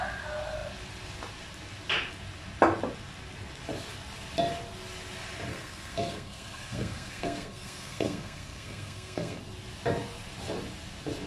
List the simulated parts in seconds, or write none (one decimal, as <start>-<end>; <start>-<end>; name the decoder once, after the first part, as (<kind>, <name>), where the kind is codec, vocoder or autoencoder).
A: 5.5-9.4 (codec, SNAC)